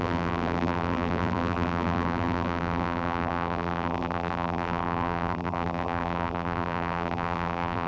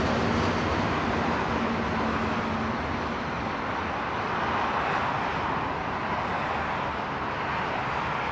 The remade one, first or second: first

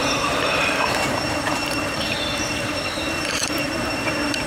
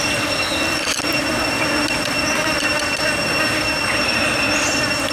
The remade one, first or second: first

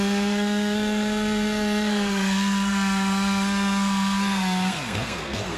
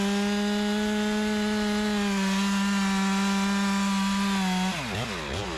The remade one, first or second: first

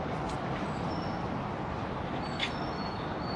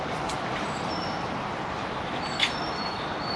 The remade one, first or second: second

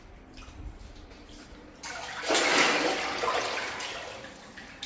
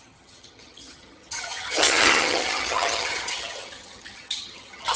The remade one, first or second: second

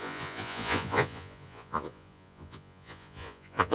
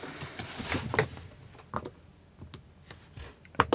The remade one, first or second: first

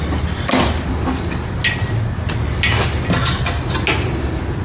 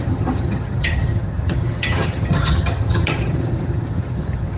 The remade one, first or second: second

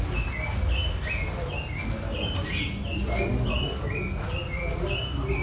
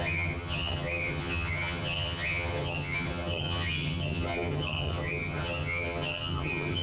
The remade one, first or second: second